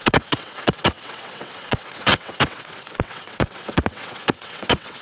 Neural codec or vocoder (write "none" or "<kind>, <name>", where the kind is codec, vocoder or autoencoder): vocoder, WaveNeXt